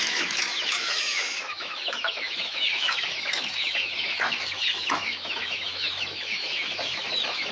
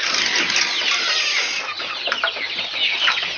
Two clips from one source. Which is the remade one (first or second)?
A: first